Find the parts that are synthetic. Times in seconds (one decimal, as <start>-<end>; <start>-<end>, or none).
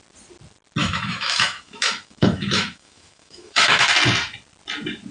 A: 0.8-3.9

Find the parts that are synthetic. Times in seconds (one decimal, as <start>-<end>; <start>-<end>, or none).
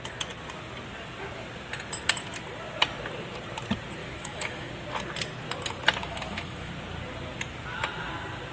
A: 4.0-4.7; 6.0-6.7